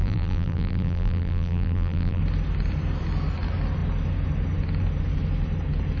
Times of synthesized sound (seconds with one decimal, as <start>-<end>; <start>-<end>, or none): 0.0-2.2